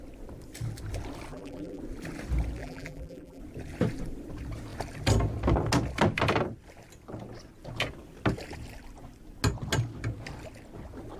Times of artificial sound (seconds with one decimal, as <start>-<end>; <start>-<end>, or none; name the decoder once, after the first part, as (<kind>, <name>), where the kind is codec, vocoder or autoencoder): 1.3-1.8 (vocoder, BigVGAN v2); 2.6-3.4

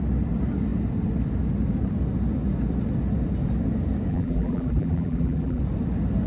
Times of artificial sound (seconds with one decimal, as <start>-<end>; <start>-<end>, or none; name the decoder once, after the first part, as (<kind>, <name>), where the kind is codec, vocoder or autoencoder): 4.1-5.6 (vocoder, BigVGAN v2)

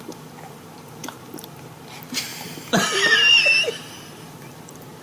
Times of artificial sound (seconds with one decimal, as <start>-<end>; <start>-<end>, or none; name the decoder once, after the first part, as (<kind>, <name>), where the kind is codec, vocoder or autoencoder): 0.0-5.0 (vocoder, BigVGAN v2)

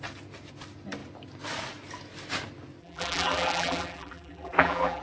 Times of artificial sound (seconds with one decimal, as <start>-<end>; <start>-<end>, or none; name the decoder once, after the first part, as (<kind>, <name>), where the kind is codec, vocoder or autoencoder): 2.8-5.0 (vocoder, BigVGAN v2)

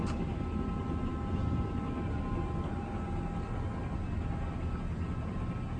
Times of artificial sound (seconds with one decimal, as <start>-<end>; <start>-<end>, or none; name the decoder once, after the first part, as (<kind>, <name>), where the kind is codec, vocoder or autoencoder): none

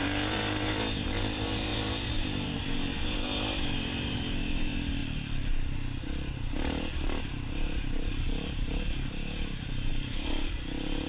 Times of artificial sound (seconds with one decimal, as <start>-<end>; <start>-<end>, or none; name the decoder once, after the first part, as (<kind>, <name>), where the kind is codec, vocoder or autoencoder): 0.0-5.0 (vocoder, BigVGAN v2); 7.2-11.1